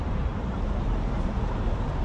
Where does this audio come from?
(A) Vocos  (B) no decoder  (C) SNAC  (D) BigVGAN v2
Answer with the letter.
D